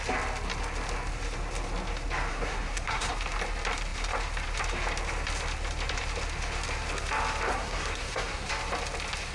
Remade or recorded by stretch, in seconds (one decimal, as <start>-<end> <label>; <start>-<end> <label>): 0.0-2.3 recorded; 2.3-3.1 remade; 3.1-7.5 recorded; 7.5-8.5 remade; 8.5-9.3 recorded